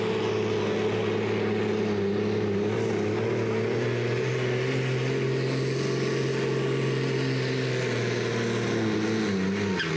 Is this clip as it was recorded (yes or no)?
yes